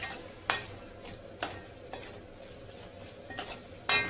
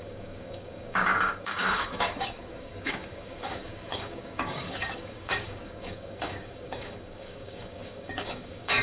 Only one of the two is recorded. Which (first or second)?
first